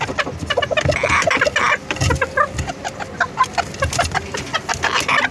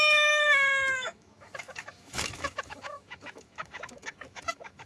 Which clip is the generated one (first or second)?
second